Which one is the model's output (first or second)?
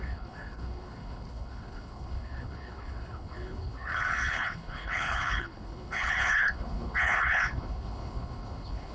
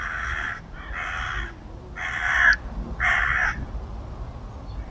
first